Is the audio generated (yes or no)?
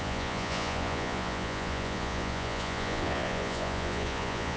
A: yes